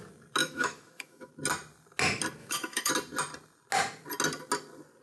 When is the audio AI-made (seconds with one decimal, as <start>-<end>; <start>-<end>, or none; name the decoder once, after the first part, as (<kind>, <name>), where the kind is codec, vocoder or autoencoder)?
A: 0.4-1.3 (autoencoder, DAC-VAE); 2.4-2.9